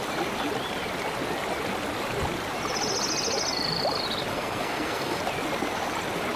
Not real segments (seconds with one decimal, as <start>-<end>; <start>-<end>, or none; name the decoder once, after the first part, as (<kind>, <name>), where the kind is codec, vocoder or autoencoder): 4.3-5.2 (codec, SNAC)